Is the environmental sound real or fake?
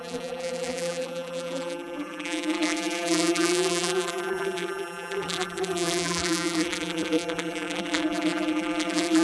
fake